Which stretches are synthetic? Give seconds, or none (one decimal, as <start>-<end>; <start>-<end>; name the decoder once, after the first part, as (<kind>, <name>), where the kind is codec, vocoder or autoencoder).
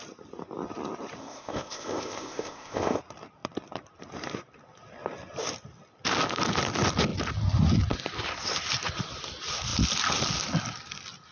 1.2-3.0 (codec, ZipCodec)